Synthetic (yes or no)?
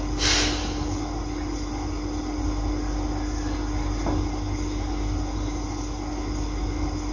no